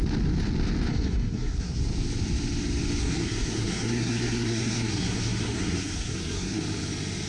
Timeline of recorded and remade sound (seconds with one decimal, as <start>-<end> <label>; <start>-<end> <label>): 0.0-0.9 recorded; 0.9-1.8 remade; 1.8-3.0 recorded; 3.0-6.6 remade; 6.6-7.3 recorded